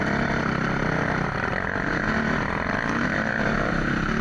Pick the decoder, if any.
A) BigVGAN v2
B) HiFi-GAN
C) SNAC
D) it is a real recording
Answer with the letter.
D